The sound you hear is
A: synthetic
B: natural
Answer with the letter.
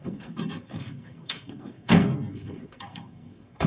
A